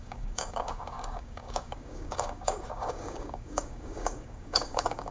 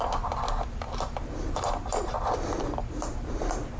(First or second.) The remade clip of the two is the first